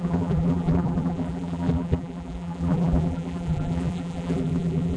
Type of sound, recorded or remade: remade